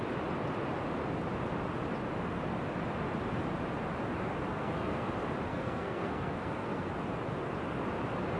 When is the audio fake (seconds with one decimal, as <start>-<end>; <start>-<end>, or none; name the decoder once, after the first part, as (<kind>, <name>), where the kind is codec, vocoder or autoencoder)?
4.5-5.1 (codec, SNAC); 5.5-6.9